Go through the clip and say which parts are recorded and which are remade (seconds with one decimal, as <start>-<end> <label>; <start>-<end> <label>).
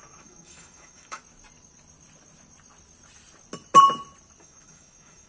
0.0-1.2 remade; 1.2-4.4 recorded; 4.4-5.3 remade